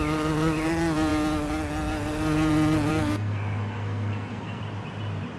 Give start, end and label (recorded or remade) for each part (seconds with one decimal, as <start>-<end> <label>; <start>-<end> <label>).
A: 0.0-2.9 recorded; 2.9-4.6 remade; 4.6-5.4 recorded